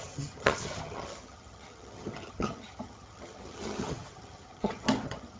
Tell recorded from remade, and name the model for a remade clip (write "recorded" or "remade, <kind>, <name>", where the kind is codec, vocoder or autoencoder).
remade, vocoder, HiFi-GAN